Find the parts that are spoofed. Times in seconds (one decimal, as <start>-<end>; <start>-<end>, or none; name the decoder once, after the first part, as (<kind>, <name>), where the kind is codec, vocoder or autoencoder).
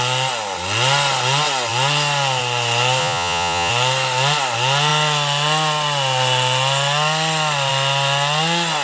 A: 3.0-3.7 (vocoder, Vocos)